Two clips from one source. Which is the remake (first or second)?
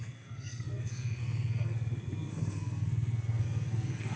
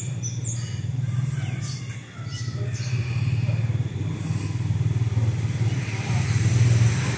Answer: first